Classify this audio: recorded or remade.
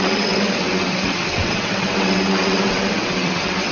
remade